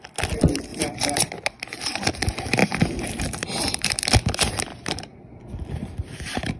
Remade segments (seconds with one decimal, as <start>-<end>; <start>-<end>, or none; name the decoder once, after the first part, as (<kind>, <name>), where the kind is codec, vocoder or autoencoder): 0.7-1.2 (vocoder, BigVGAN v2); 2.6-3.9